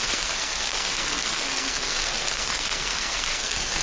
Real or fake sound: fake